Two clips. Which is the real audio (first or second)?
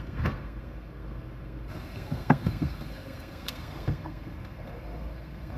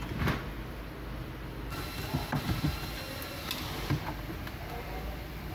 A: second